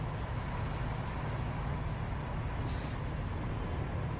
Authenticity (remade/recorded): recorded